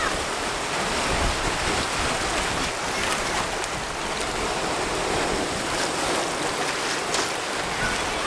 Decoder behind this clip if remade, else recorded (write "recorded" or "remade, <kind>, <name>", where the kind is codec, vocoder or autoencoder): recorded